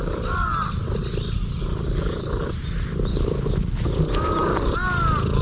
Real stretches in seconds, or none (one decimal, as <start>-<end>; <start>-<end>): 0.0-1.7; 2.5-3.1; 4.0-5.4